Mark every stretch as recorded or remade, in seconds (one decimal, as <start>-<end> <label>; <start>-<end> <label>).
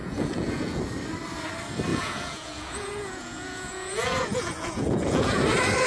0.0-0.8 remade; 0.8-1.9 recorded; 1.9-5.4 remade; 5.4-5.9 recorded